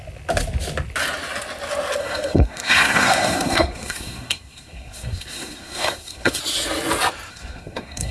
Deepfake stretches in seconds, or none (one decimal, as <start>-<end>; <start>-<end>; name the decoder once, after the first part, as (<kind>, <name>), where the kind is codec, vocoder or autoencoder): 2.0-6.4 (codec, SNAC); 7.3-8.1